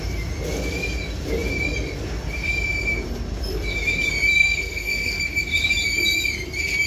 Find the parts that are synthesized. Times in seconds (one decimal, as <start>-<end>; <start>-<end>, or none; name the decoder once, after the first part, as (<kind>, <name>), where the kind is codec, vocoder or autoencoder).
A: 4.4-5.2 (codec, SNAC)